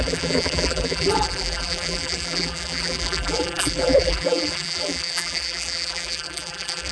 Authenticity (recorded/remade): remade